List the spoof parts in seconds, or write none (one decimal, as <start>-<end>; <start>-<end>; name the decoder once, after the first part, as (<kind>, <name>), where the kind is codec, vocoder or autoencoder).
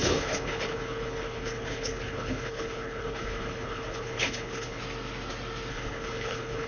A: 0.0-4.8 (codec, HILCodec); 5.7-6.7